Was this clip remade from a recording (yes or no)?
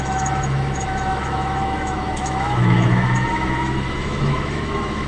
yes